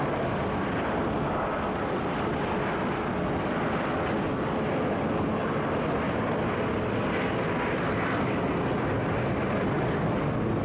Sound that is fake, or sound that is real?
real